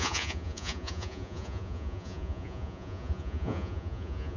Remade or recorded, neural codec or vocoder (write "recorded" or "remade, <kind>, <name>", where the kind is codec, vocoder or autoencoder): remade, vocoder, Vocos